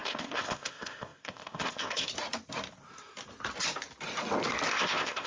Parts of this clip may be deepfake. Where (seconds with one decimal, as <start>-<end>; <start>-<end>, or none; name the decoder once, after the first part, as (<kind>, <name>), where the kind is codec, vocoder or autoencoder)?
0.0-2.1 (codec, ZipCodec); 4.7-5.3